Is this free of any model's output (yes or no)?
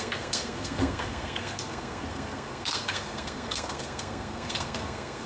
no